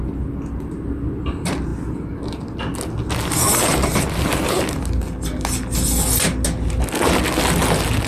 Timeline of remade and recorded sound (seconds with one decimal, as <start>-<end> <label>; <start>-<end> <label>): 0.0-8.1 recorded